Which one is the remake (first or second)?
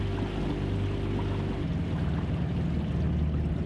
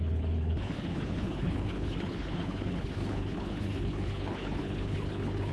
second